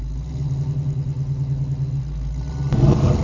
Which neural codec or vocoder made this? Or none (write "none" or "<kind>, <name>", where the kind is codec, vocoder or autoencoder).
none